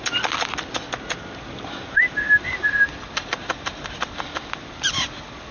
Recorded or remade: recorded